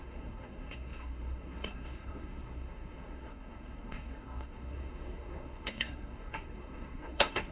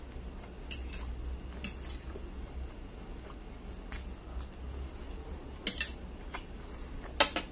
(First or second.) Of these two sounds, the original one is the second